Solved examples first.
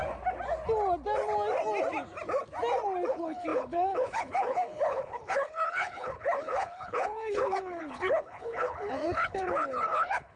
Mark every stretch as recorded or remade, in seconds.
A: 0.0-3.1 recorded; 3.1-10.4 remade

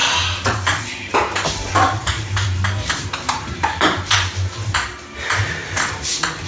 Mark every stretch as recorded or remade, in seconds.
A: 0.0-2.0 recorded; 2.0-4.3 remade; 4.3-6.5 recorded

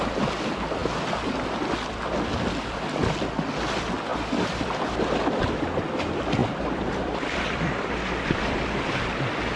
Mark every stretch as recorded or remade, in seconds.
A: 0.0-4.1 recorded; 4.1-4.8 remade; 4.8-6.4 recorded; 6.4-8.6 remade; 8.6-9.6 recorded

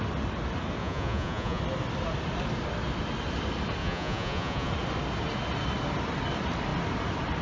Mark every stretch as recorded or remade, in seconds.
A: 0.0-0.8 recorded; 0.8-1.6 remade; 1.6-3.8 recorded; 3.8-4.7 remade; 4.7-7.4 recorded

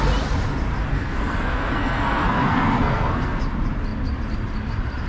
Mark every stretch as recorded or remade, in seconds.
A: 0.0-0.9 recorded; 0.9-3.4 remade; 3.4-5.1 recorded

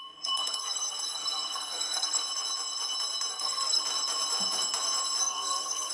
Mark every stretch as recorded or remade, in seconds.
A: 0.0-2.2 remade; 2.2-3.3 recorded; 3.3-3.8 remade; 3.8-5.2 recorded; 5.2-5.9 remade

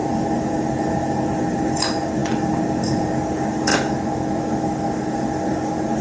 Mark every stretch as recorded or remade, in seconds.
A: 0.0-6.0 recorded